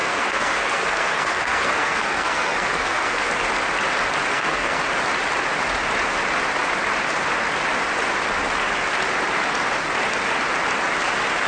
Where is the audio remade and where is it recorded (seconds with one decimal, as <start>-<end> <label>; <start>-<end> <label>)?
0.0-3.3 remade; 3.3-4.3 recorded; 4.3-4.8 remade; 4.8-11.5 recorded